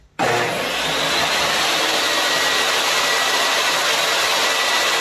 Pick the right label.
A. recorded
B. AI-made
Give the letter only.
A